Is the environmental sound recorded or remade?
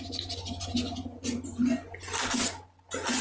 recorded